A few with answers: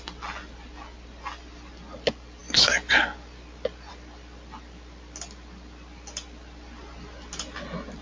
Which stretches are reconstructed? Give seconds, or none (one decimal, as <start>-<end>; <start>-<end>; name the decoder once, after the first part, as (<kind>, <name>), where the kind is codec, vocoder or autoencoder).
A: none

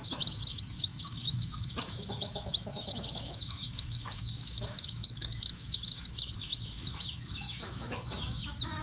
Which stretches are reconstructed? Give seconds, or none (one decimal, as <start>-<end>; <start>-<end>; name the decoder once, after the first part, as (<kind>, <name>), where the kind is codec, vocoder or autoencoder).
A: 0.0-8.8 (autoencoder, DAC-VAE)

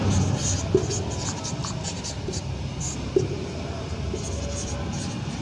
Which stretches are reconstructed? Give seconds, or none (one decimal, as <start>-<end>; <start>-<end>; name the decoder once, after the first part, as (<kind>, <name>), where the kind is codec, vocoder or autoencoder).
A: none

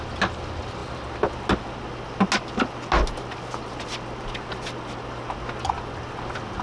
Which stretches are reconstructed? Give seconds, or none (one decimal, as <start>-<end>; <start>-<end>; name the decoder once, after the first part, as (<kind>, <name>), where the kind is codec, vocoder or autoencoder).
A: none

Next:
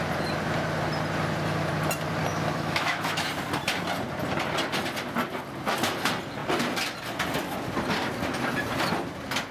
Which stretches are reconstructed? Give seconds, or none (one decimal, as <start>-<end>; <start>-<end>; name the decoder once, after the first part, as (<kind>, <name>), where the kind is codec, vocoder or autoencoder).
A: 2.3-3.3 (autoencoder, DAC-VAE)

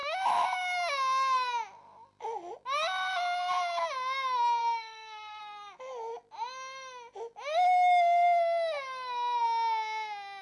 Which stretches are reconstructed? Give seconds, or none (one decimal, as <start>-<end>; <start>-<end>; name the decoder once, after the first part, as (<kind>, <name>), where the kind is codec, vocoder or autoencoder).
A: 0.0-0.9 (autoencoder, DAC-VAE); 4.6-5.4